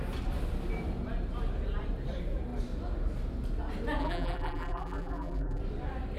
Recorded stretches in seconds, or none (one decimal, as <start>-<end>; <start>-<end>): 0.0-4.0; 5.6-6.2